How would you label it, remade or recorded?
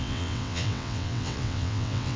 remade